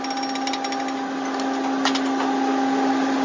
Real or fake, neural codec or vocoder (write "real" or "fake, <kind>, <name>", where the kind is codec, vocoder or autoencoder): real